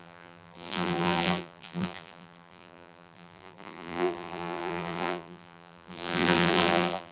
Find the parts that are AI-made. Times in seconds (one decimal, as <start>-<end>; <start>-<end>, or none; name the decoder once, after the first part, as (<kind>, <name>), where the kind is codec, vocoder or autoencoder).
0.0-7.1 (vocoder, BigVGAN v2)